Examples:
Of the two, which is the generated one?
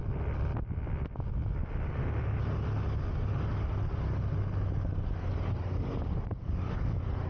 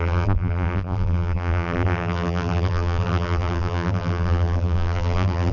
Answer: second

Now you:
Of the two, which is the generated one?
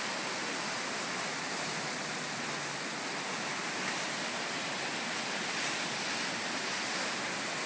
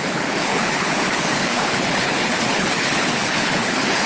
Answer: second